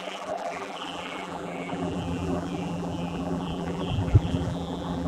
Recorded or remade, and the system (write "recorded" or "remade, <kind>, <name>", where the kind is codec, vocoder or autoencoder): remade, vocoder, BigVGAN v2